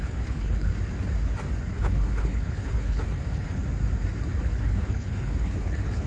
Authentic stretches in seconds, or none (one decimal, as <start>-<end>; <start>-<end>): 0.7-1.7; 3.6-4.6